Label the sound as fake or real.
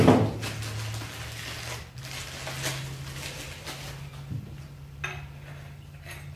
real